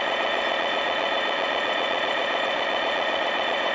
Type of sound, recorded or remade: remade